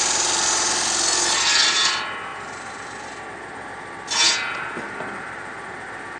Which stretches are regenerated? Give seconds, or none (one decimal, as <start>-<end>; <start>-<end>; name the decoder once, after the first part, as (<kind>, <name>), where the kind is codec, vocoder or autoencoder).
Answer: none